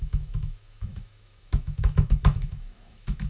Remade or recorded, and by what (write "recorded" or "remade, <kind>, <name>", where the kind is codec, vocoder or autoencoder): remade, autoencoder, DAC-VAE